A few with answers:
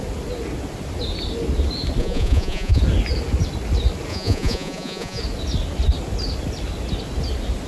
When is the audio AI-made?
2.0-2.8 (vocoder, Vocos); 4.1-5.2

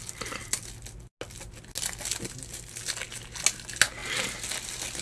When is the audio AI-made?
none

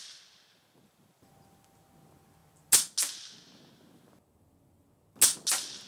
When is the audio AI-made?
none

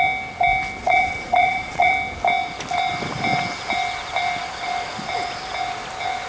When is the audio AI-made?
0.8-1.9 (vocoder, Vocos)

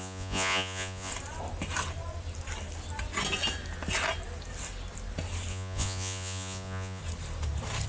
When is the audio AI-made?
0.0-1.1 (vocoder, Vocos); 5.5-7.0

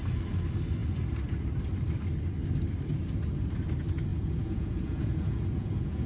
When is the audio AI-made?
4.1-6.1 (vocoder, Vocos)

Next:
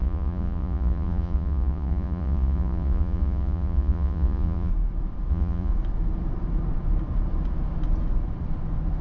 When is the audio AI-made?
0.0-4.7 (vocoder, Vocos); 5.3-5.7

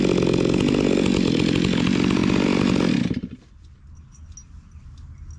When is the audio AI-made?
none